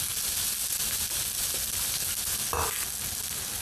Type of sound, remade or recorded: recorded